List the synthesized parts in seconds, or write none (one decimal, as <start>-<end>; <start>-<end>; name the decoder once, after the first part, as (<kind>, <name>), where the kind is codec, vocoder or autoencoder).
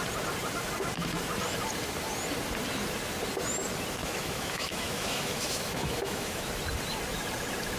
4.0-6.5 (autoencoder, DAC-VAE)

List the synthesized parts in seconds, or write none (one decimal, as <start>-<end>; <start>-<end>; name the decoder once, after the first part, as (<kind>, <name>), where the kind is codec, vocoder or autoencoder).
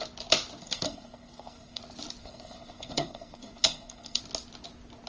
0.6-1.8 (codec, SNAC); 2.2-4.2